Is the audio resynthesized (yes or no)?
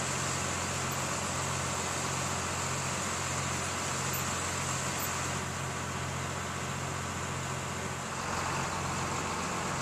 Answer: no